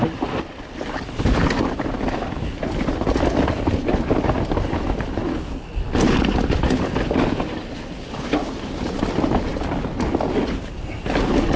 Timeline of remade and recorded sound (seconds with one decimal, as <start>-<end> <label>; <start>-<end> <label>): 0.0-11.6 recorded

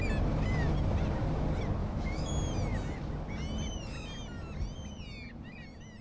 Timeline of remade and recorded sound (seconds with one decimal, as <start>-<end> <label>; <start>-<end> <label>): 0.0-1.8 recorded; 1.8-2.3 remade; 2.3-6.0 recorded